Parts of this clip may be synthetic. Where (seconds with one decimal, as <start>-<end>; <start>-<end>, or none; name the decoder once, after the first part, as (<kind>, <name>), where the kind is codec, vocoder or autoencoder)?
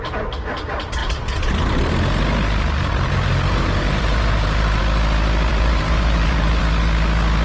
2.9-4.8 (vocoder, BigVGAN v2); 5.5-6.6